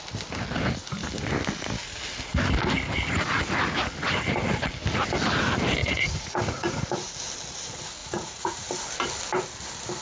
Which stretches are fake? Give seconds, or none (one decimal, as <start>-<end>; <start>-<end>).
5.8-6.8; 8.0-8.7